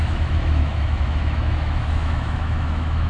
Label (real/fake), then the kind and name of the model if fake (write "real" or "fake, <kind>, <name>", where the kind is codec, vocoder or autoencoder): fake, autoencoder, DAC-VAE